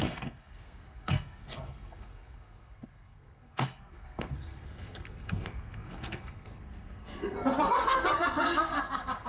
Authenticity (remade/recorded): remade